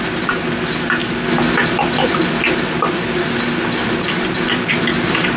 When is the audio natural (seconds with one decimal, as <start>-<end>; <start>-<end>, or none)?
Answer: 1.0-4.2